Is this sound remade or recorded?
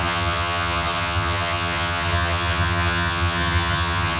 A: remade